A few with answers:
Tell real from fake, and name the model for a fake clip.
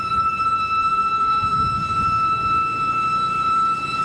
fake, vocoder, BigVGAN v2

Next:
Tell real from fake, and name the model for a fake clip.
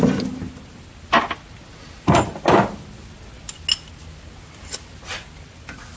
real